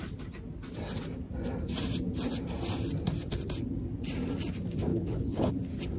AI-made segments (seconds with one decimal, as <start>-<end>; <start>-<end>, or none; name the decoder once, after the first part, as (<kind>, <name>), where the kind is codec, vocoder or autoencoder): 4.9-5.5 (codec, HILCodec)